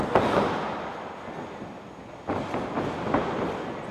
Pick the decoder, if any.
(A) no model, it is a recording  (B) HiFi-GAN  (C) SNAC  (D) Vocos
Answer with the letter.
A